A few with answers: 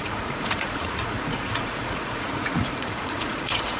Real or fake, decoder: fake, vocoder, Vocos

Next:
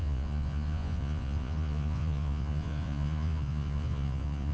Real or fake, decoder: fake, vocoder, Vocos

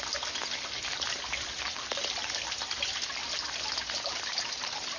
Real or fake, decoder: real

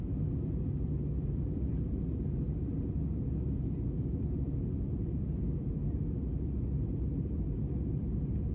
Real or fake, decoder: real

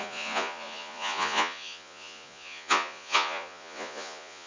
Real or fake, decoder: fake, vocoder, Vocos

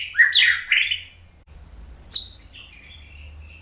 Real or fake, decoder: real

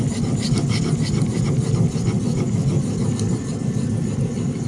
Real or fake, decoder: real